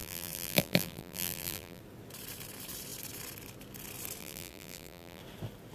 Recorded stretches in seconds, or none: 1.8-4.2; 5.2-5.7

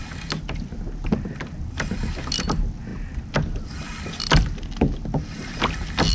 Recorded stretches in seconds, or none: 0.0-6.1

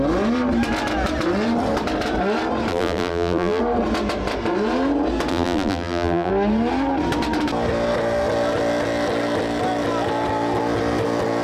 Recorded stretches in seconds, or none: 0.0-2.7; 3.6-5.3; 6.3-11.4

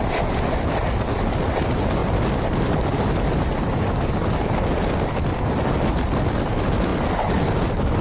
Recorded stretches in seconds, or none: 2.0-5.9; 6.9-8.0